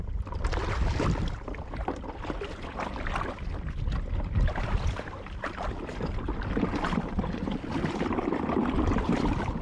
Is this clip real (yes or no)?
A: yes